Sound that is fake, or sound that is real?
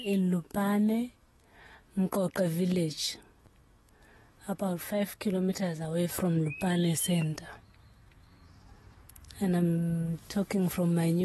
fake